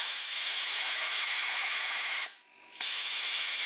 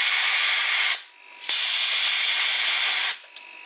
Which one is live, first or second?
second